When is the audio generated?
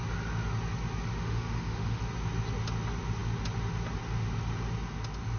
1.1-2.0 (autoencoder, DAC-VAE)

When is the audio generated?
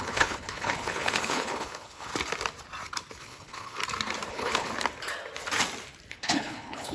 0.0-2.1 (codec, HILCodec); 3.2-3.8; 4.3-4.7; 6.1-6.9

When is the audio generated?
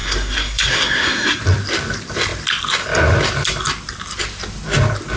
0.0-1.4 (codec, SNAC)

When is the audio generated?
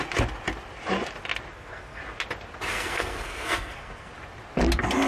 1.5-2.0 (codec, SNAC); 2.7-4.1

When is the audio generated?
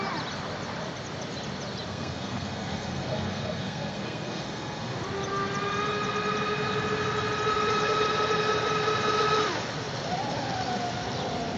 1.9-5.0 (codec, SNAC)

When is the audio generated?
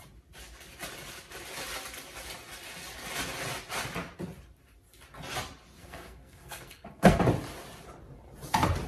5.8-7.2 (codec, SNAC)